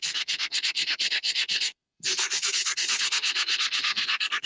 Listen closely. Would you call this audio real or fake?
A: fake